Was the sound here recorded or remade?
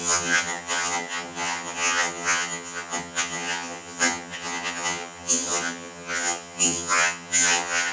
remade